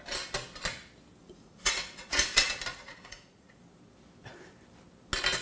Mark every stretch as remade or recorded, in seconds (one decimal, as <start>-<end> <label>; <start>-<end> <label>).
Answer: 0.0-1.2 recorded; 1.2-2.2 remade; 2.2-2.7 recorded; 2.7-3.6 remade; 3.6-5.4 recorded